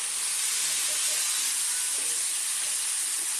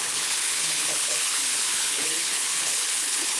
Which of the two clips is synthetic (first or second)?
second